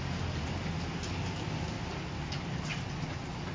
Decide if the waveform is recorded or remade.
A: recorded